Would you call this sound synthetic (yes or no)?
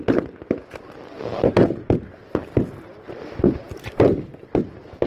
no